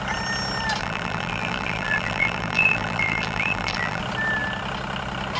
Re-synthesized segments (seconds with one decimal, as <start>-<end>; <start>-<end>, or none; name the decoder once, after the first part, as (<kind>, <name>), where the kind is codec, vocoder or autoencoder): 0.8-4.0 (vocoder, BigVGAN v2)